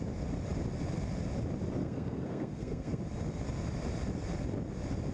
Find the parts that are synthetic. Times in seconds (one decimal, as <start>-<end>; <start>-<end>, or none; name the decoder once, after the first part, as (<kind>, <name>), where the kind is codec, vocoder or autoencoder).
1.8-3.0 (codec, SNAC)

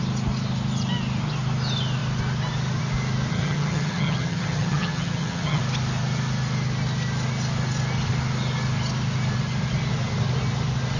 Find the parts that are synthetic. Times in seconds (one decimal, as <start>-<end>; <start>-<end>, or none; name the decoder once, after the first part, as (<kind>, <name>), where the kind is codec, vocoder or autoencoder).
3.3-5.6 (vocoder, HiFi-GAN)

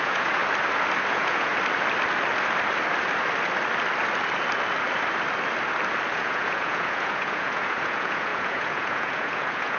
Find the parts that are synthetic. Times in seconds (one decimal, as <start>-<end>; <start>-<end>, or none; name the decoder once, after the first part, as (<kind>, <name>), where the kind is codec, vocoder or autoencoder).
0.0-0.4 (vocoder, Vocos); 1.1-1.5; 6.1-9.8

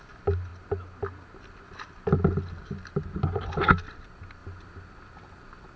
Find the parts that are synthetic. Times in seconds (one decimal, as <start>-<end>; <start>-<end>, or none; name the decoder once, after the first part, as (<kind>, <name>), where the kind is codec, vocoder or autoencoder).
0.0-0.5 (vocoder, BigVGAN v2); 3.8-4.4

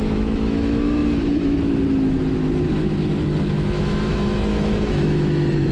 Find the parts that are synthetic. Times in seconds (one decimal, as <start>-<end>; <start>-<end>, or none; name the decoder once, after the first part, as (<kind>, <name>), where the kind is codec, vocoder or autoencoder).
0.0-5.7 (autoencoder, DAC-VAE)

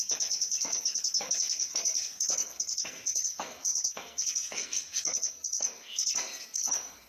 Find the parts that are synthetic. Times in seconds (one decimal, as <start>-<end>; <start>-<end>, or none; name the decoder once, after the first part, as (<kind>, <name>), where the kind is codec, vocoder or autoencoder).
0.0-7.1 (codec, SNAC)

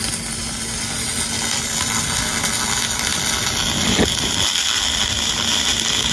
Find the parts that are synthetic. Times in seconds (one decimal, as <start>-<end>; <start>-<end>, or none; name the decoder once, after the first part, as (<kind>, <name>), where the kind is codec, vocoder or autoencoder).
none

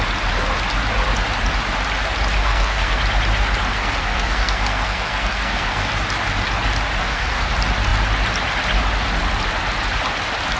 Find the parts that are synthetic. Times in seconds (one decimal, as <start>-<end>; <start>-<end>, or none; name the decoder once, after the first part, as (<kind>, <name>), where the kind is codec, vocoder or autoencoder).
2.4-3.0 (codec, SNAC); 3.7-5.9; 7.0-7.5